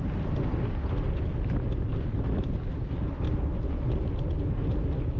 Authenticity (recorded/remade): recorded